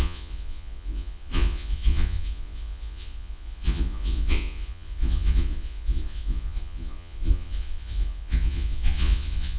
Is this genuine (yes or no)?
no